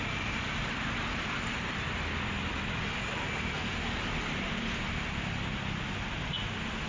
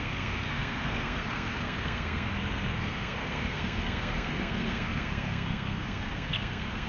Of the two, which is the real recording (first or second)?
first